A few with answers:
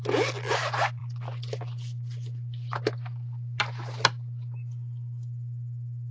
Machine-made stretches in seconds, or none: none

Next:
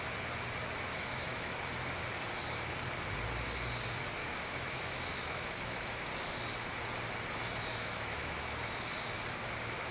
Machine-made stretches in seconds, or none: 0.9-1.6 (autoencoder, DAC-VAE); 4.2-6.1; 7.7-8.8

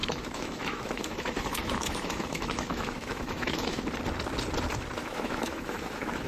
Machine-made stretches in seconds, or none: 0.0-3.8 (autoencoder, DAC-VAE); 5.0-6.3

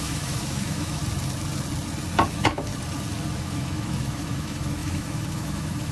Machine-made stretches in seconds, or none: 0.0-1.0 (autoencoder, DAC-VAE); 2.3-2.7; 3.4-5.9

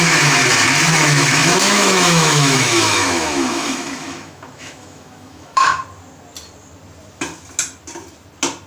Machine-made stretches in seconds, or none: 0.0-0.4 (autoencoder, DAC-VAE); 0.9-5.7

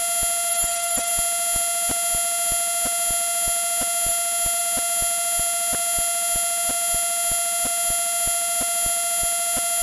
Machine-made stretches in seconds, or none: 0.5-1.1 (autoencoder, DAC-VAE)

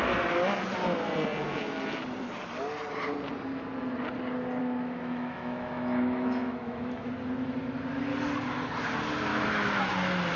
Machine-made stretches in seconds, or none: 4.6-7.1 (autoencoder, DAC-VAE); 9.3-9.8